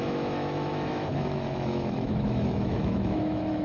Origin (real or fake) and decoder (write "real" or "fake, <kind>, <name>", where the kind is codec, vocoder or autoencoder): fake, autoencoder, DAC-VAE